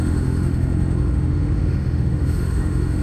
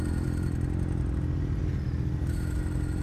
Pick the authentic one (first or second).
second